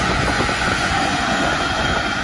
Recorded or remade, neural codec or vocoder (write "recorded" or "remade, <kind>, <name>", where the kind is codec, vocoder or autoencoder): remade, vocoder, Vocos